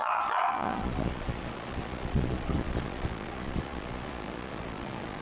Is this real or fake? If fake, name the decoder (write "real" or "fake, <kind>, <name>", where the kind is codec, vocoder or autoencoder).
fake, vocoder, Vocos